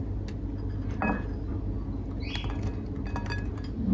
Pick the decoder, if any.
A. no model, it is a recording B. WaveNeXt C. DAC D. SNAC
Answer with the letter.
A